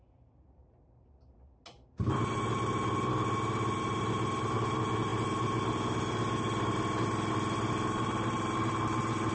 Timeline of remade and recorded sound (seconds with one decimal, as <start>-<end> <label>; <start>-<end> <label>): 0.0-9.3 recorded